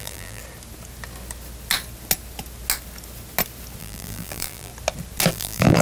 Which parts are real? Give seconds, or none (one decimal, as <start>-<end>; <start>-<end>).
0.4-3.8; 4.7-5.3